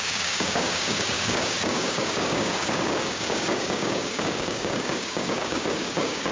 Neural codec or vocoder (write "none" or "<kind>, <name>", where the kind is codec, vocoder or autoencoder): codec, DAC